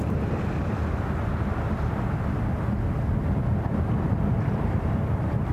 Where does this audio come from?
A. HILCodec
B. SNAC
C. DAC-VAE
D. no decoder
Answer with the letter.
D